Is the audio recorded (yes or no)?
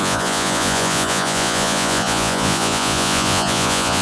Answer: no